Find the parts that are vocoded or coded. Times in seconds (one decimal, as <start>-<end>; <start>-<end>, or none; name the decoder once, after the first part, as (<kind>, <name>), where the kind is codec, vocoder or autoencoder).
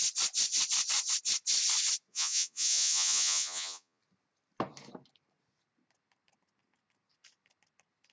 2.1-4.0 (vocoder, Vocos)